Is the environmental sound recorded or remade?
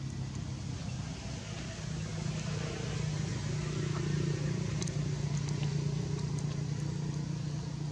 recorded